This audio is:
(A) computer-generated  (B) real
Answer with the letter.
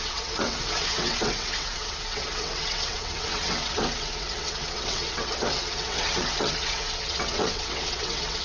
A